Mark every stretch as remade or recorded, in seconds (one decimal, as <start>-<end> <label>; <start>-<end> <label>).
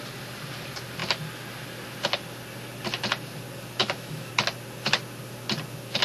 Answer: 0.0-3.8 recorded; 3.8-4.3 remade; 4.3-6.0 recorded